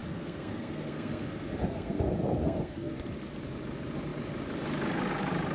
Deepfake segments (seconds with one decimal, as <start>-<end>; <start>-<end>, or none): 0.0-3.1